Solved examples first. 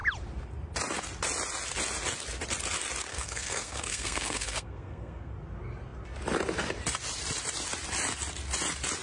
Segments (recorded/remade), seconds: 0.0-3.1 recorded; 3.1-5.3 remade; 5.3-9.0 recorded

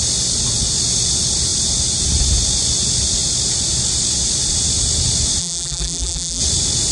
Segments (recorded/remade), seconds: 0.0-5.4 recorded; 5.4-6.4 remade; 6.4-6.9 recorded

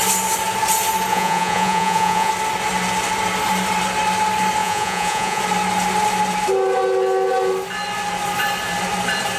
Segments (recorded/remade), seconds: 0.0-1.1 recorded; 1.1-2.3 remade; 2.3-4.6 recorded; 4.6-5.4 remade; 5.4-9.4 recorded

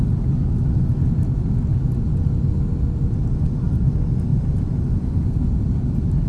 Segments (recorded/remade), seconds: 0.0-4.3 recorded; 4.3-4.9 remade; 4.9-6.3 recorded

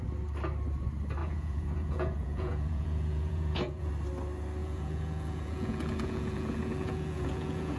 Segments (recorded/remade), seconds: 0.0-1.2 recorded; 1.2-3.9 remade; 3.9-4.6 recorded; 4.6-7.8 remade

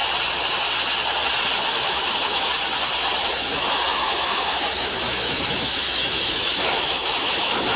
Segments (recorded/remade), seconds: 0.0-1.7 recorded; 1.7-2.5 remade; 2.5-3.9 recorded; 3.9-7.8 remade